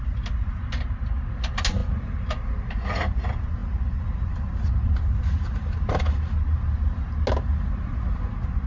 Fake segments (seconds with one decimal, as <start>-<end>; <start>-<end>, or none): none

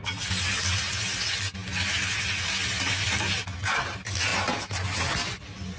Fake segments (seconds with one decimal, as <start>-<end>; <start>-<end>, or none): 4.3-5.0

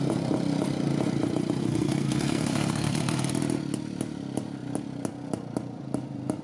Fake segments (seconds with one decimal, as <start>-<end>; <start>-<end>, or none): 1.6-3.3